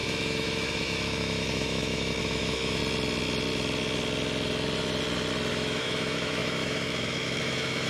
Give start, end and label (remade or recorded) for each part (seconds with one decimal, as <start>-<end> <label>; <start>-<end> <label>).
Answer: 0.0-2.8 remade; 2.8-5.5 recorded; 5.5-7.9 remade